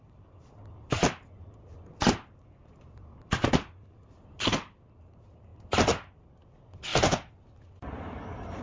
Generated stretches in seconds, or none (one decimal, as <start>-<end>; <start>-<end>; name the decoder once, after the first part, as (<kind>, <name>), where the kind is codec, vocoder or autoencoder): none